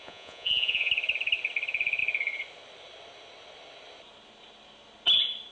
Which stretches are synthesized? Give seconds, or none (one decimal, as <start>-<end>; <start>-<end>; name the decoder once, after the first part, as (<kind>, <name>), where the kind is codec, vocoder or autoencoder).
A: 0.0-0.9 (vocoder, Vocos)